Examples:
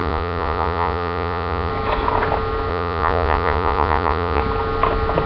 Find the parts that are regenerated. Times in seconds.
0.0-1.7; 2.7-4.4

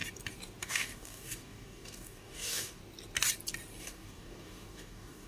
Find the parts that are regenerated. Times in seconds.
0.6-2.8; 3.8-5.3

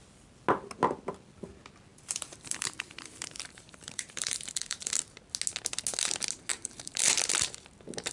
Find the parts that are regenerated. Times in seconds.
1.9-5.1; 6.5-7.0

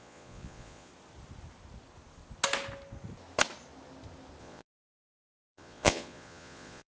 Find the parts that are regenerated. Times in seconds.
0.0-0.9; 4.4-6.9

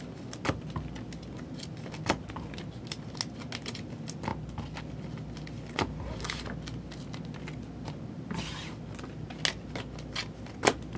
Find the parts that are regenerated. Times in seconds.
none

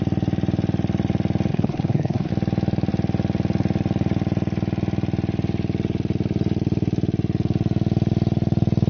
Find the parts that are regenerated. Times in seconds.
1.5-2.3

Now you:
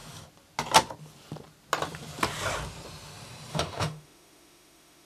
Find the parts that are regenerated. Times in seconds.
3.5-5.1

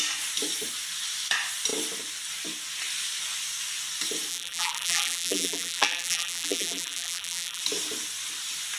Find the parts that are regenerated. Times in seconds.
4.3-7.6